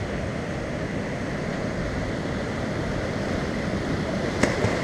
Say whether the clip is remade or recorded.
recorded